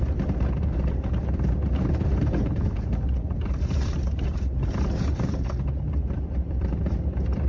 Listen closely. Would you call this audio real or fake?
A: fake